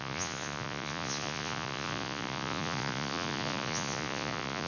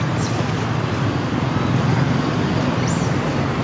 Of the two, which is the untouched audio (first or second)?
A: second